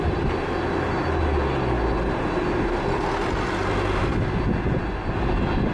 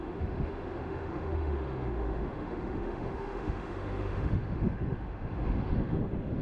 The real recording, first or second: first